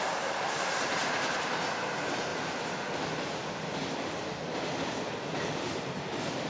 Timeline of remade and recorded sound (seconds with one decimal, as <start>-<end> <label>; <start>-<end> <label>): 0.0-1.0 remade; 1.0-1.7 recorded; 1.7-2.3 remade; 2.3-5.4 recorded; 5.4-6.5 remade